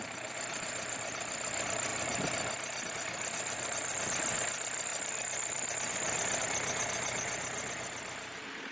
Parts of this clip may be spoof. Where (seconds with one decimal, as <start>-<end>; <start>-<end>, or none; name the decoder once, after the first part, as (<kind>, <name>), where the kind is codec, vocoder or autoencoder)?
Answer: none